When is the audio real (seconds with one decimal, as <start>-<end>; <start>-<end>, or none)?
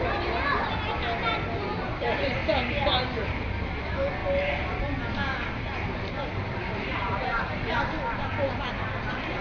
0.0-6.8; 7.5-9.4